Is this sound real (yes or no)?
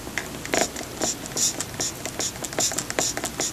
yes